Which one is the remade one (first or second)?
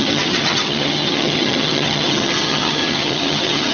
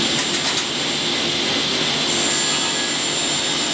first